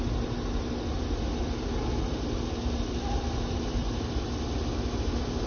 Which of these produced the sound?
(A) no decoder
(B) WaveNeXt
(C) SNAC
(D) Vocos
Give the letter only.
A